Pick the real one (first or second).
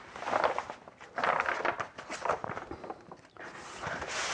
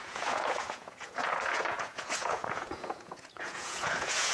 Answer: first